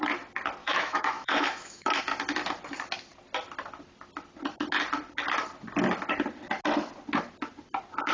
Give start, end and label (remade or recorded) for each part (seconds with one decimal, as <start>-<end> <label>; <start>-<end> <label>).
0.0-0.6 recorded; 0.6-2.0 remade; 2.0-8.1 recorded